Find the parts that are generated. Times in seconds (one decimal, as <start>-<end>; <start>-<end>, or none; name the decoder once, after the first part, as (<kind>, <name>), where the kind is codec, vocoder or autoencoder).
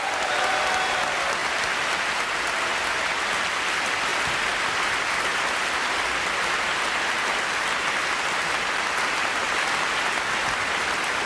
none